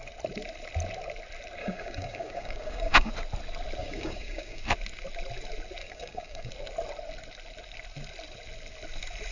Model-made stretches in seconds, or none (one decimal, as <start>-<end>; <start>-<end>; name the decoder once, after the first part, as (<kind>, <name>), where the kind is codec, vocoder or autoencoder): 1.6-3.1 (codec, DAC); 3.8-4.6; 5.8-6.5